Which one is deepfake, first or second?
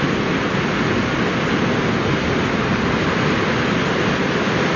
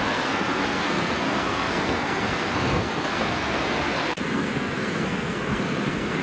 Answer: second